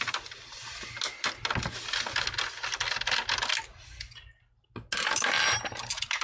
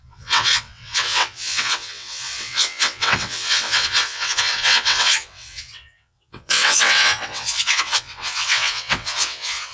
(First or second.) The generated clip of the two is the second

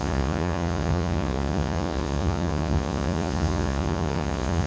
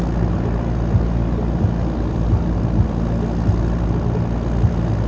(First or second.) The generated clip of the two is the first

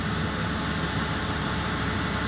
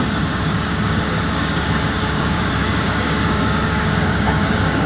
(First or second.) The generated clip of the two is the second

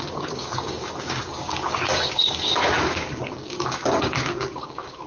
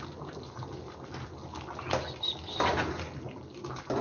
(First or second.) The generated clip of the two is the first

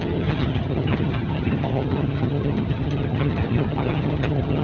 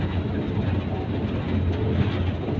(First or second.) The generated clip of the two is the first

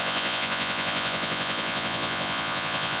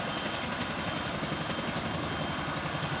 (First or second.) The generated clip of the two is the first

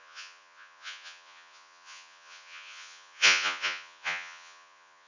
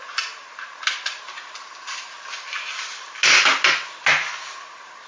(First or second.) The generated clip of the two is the first